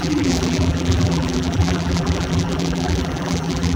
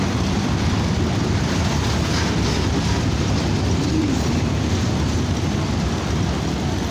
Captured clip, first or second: second